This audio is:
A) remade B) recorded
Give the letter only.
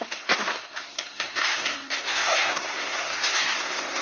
A